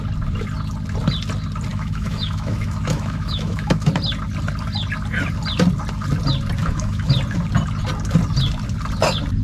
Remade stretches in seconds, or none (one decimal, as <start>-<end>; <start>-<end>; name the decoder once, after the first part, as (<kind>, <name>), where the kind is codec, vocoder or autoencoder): 1.7-3.9 (autoencoder, DAC-VAE); 6.6-7.1